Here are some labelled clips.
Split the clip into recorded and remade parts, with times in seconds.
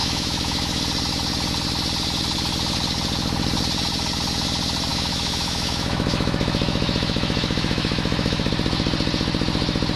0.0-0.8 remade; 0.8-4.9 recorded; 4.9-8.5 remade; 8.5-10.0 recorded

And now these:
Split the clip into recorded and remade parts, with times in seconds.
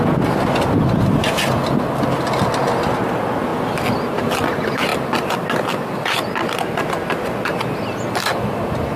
0.0-9.0 recorded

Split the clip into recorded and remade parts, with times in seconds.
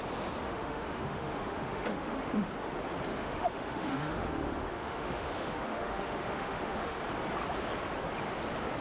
0.0-0.4 recorded; 0.4-2.5 remade; 2.5-3.1 recorded; 3.1-7.0 remade; 7.0-8.8 recorded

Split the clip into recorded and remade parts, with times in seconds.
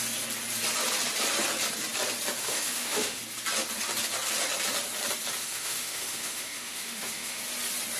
0.0-2.4 recorded; 2.4-3.2 remade; 3.2-5.4 recorded; 5.4-7.4 remade; 7.4-8.0 recorded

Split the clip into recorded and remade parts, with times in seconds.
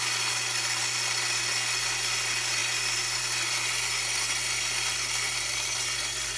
0.0-6.4 recorded